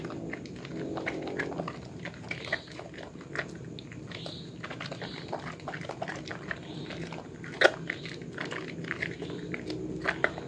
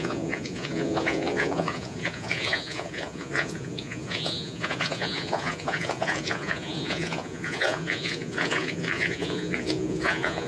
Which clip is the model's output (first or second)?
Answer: second